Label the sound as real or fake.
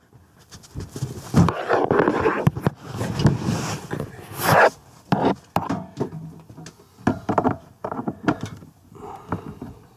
real